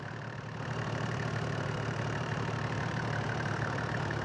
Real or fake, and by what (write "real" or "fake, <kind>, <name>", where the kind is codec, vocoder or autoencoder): fake, vocoder, BigVGAN v2